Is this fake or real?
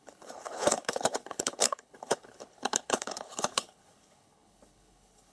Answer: fake